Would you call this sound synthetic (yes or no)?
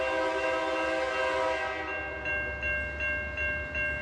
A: no